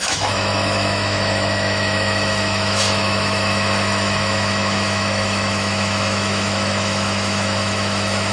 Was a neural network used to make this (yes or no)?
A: yes